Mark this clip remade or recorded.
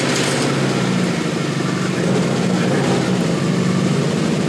recorded